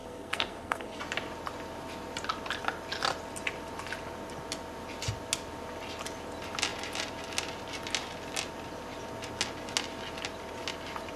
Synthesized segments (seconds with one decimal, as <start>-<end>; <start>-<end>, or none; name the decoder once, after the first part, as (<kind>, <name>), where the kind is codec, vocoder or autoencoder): 0.0-1.0 (codec, SNAC)